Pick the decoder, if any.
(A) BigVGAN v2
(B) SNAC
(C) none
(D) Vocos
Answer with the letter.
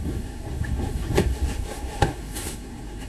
B